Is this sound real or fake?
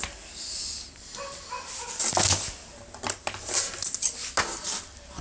real